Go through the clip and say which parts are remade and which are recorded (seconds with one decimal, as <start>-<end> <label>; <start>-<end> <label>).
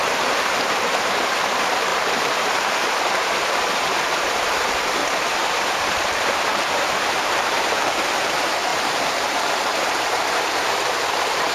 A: 0.0-5.0 remade; 5.0-5.7 recorded; 5.7-11.5 remade